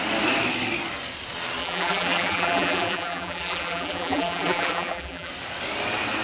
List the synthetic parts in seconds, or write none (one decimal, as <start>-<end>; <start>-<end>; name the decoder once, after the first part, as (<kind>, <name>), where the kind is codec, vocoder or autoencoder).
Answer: 1.6-5.3 (vocoder, BigVGAN v2)